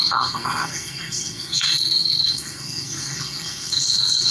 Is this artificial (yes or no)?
yes